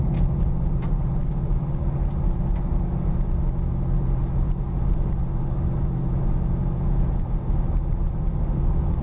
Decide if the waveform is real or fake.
real